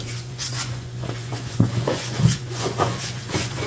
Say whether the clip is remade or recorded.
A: remade